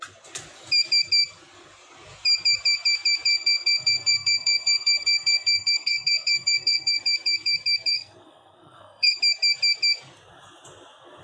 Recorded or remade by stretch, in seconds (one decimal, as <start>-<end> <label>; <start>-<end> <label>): 0.0-3.3 recorded; 3.3-7.0 remade; 7.0-7.9 recorded; 7.9-9.2 remade; 9.2-11.2 recorded